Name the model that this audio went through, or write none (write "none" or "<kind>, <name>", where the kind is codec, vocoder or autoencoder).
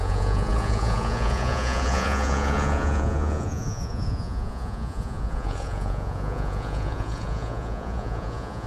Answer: vocoder, Vocos